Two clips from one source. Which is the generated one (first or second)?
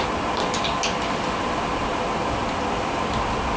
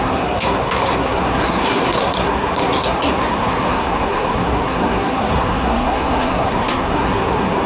second